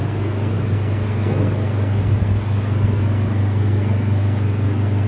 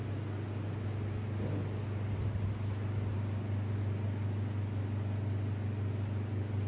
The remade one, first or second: first